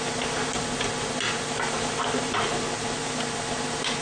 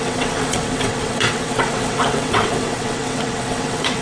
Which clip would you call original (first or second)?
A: first